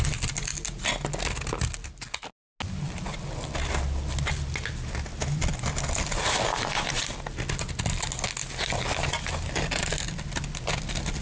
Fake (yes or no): no